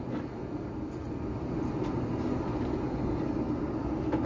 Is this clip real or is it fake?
real